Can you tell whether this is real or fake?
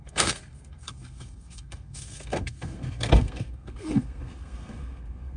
fake